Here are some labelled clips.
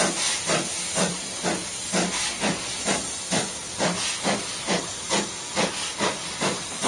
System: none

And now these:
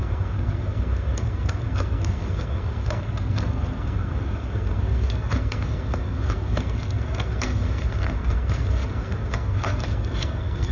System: codec, SNAC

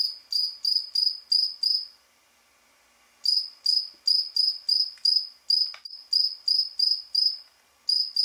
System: none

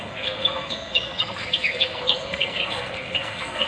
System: codec, SNAC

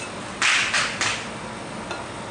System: none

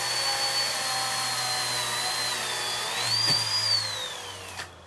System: none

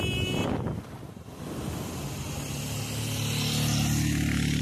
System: none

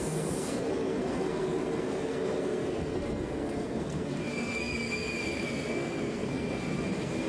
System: codec, SNAC